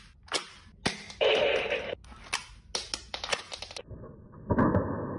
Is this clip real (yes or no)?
yes